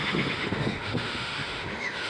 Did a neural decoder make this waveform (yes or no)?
yes